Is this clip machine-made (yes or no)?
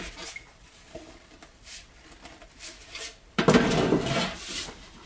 yes